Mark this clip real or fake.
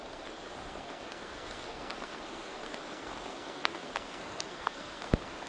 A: fake